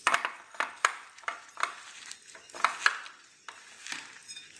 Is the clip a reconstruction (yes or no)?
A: no